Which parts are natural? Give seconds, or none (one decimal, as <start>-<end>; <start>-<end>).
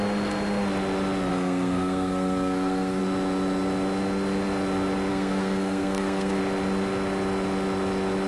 0.0-1.3; 3.0-5.1; 6.4-8.3